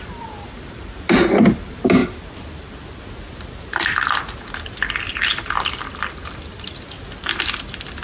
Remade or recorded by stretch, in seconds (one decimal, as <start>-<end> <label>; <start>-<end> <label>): 0.0-8.0 recorded